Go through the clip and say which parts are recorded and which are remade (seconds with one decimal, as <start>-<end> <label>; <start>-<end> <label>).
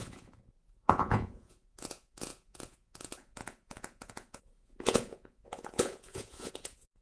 0.0-7.0 remade